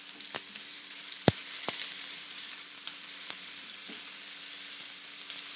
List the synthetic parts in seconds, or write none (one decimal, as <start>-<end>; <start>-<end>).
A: 0.7-3.8